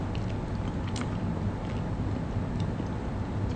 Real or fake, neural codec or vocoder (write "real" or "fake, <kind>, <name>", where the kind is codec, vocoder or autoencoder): real